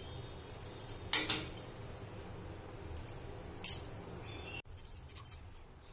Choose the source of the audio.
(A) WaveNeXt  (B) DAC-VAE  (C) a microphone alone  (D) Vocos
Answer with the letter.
C